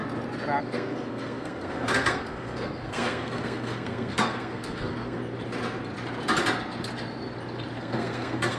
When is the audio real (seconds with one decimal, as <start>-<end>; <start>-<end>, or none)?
0.0-0.6; 5.2-7.8